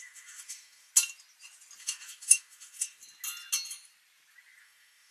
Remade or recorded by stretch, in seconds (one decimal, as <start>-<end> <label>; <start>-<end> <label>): 0.0-0.9 remade; 0.9-1.8 recorded; 1.8-3.0 remade; 3.0-4.6 recorded; 4.6-5.1 remade